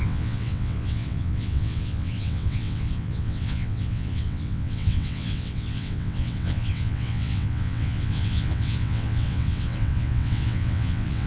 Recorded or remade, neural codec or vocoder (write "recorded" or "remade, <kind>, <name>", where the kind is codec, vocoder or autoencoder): remade, vocoder, WaveNeXt